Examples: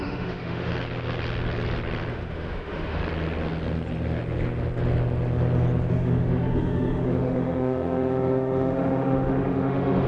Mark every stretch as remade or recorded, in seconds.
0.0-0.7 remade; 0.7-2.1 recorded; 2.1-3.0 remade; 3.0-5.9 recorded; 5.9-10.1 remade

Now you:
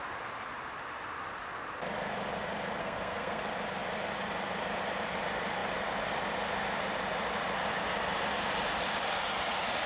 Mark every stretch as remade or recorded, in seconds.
0.0-2.8 recorded; 2.8-3.4 remade; 3.4-9.9 recorded

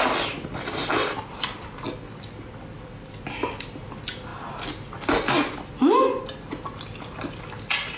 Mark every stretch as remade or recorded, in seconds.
0.0-8.0 recorded

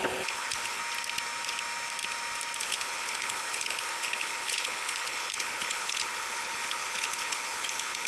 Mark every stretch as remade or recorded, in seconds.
0.0-0.8 remade; 0.8-2.6 recorded; 2.6-8.1 remade